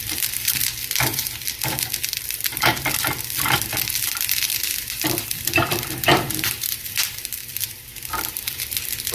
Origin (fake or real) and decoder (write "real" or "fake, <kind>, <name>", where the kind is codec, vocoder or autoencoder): fake, vocoder, BigVGAN v2